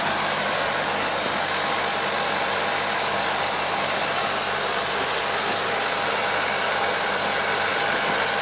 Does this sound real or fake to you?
real